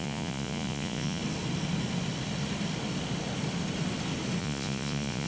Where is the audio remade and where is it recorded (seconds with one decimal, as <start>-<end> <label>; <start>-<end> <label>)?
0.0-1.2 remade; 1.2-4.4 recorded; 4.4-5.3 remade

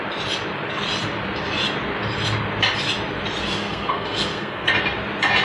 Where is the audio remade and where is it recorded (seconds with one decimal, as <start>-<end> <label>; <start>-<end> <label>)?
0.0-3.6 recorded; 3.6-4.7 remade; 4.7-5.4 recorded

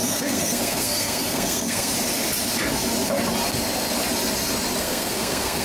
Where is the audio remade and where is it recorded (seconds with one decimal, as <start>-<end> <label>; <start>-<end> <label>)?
0.0-1.9 remade; 1.9-4.8 recorded; 4.8-5.6 remade

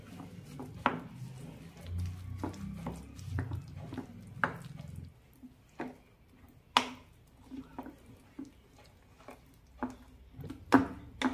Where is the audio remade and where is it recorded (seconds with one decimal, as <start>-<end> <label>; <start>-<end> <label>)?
0.0-11.3 recorded

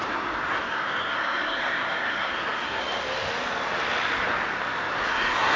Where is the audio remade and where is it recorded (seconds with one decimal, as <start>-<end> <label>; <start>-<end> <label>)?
0.0-0.5 recorded; 0.5-2.8 remade; 2.8-5.0 recorded; 5.0-5.6 remade

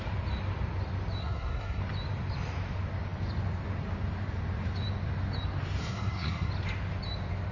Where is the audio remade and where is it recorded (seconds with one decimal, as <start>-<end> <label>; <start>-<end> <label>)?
0.0-1.2 recorded; 1.2-1.8 remade; 1.8-5.8 recorded; 5.8-6.5 remade; 6.5-7.5 recorded

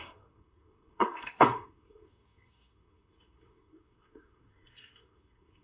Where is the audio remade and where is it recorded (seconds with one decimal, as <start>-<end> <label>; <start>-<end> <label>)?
0.0-5.6 remade